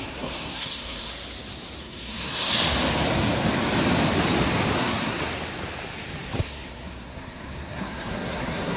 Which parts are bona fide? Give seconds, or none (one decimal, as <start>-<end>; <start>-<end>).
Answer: 1.1-1.8; 2.5-4.8; 5.2-6.4